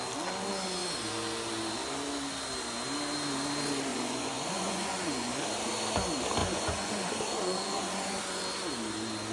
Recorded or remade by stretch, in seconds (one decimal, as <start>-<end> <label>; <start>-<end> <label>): 0.0-3.9 recorded; 3.9-5.3 remade; 5.3-6.4 recorded; 6.4-8.2 remade; 8.2-9.3 recorded